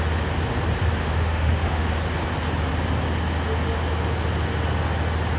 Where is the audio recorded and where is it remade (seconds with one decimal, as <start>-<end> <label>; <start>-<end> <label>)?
0.0-1.0 recorded; 1.0-1.9 remade; 1.9-5.4 recorded